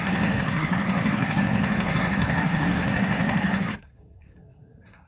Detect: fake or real fake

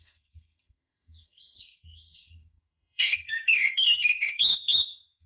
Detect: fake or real fake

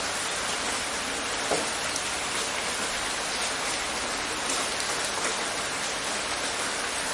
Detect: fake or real real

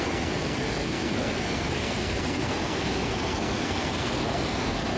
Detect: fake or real fake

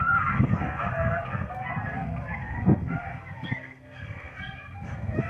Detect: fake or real fake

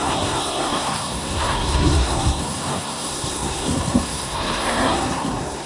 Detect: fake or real fake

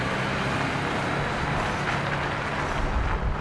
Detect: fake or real real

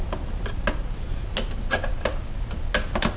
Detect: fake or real real